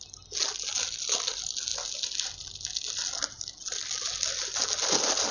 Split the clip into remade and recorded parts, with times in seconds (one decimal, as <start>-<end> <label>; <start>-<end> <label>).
0.0-5.3 recorded